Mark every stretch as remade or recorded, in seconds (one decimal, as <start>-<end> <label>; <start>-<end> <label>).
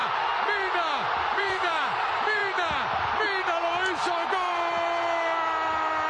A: 0.0-1.4 recorded; 1.4-2.4 remade; 2.4-6.1 recorded